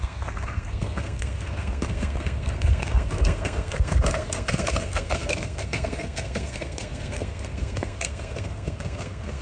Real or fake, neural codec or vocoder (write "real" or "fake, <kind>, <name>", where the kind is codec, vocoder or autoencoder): fake, codec, SNAC